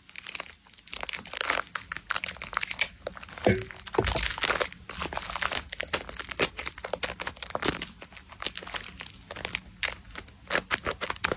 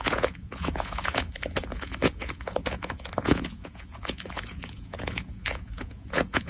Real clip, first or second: first